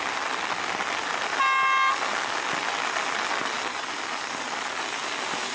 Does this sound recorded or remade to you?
recorded